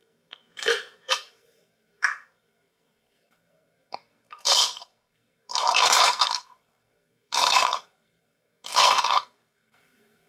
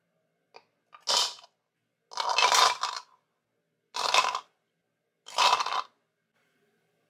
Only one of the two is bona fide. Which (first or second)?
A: second